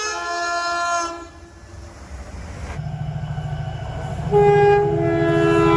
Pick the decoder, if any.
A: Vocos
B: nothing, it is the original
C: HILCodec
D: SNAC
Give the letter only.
B